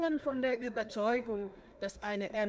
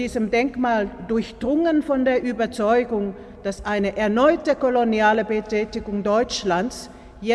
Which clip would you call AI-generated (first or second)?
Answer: first